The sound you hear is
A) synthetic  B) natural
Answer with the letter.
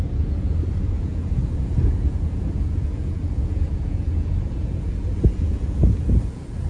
A